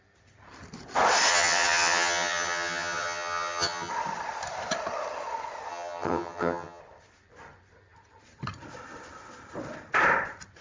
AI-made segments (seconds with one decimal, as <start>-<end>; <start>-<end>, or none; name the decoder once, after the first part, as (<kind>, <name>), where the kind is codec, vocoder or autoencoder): 1.3-3.9 (vocoder, HiFi-GAN); 5.7-6.8